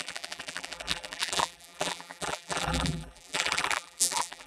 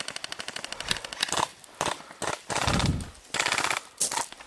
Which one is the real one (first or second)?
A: second